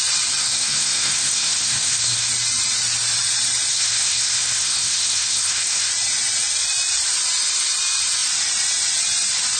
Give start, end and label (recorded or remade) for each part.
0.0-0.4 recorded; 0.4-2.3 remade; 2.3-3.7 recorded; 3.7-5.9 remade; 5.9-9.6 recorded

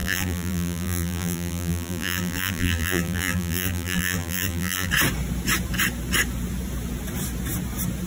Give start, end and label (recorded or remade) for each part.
0.0-4.9 remade; 4.9-8.1 recorded

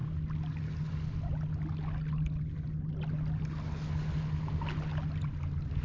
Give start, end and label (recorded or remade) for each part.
0.0-5.8 recorded

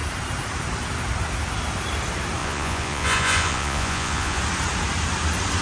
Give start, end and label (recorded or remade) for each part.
0.0-2.4 recorded; 2.4-4.4 remade; 4.4-5.6 recorded

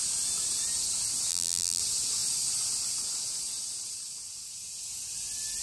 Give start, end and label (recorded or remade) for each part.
0.0-1.3 recorded; 1.3-1.8 remade; 1.8-5.6 recorded

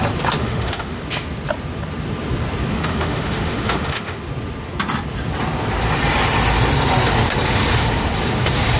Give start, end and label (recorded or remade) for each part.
0.0-0.4 recorded; 0.4-1.0 remade; 1.0-2.7 recorded; 2.7-4.2 remade; 4.2-8.8 recorded